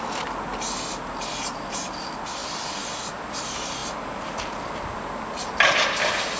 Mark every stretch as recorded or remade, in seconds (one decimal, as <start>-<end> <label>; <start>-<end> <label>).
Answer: 0.0-6.4 recorded